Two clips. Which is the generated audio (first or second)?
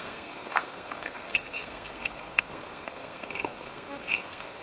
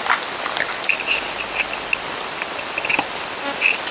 first